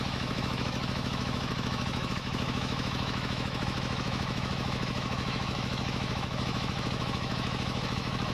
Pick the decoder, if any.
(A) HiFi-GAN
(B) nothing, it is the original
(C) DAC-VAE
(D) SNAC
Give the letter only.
C